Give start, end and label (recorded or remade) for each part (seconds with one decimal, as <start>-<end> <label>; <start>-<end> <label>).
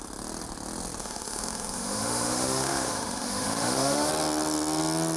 0.0-1.0 recorded; 1.0-4.1 remade; 4.1-5.2 recorded